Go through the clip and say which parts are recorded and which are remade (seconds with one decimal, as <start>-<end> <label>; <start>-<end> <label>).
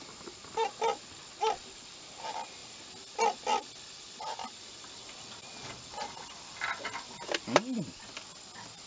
0.0-8.9 recorded